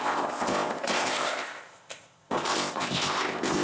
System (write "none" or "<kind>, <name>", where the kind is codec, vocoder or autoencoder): codec, ZipCodec